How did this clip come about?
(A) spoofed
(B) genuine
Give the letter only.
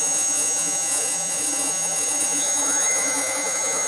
A